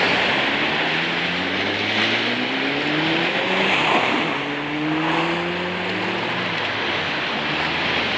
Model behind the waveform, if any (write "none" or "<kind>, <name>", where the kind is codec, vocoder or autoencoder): vocoder, BigVGAN v2